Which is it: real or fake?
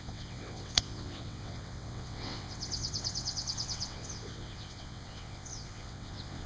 fake